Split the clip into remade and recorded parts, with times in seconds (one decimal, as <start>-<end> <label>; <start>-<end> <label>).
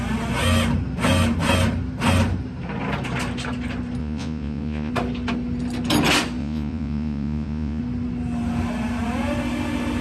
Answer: 0.0-4.0 recorded; 4.0-4.9 remade; 4.9-6.4 recorded; 6.4-7.8 remade; 7.8-10.0 recorded